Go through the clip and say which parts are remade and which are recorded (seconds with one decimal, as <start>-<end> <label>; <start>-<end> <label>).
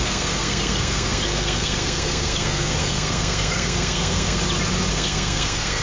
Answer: 0.0-4.4 remade; 4.4-4.9 recorded; 4.9-5.8 remade